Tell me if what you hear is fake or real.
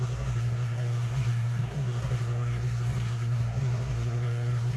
fake